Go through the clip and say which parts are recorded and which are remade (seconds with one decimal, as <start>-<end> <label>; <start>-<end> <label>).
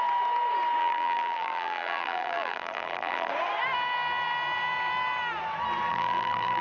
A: 0.0-0.8 recorded; 0.8-3.3 remade; 3.3-5.9 recorded; 5.9-6.6 remade